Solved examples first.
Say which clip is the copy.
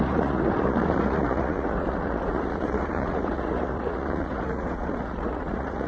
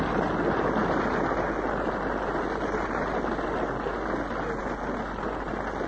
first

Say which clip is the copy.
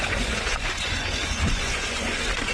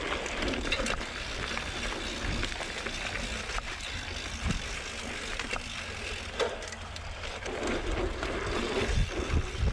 first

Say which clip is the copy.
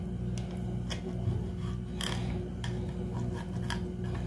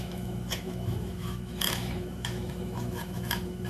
second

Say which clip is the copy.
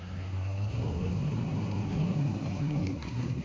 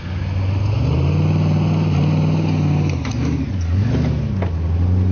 first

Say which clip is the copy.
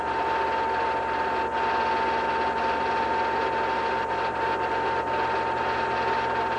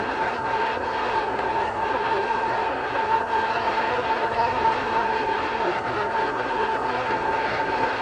second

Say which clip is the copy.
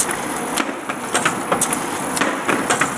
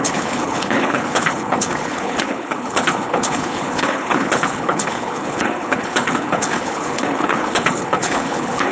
second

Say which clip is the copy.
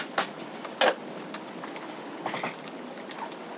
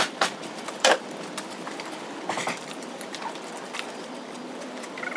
second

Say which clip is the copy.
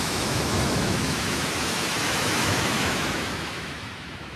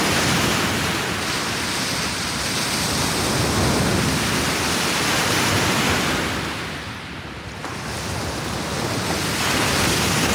first